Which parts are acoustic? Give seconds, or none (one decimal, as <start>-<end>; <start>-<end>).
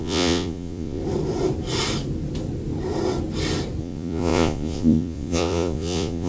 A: 1.0-3.8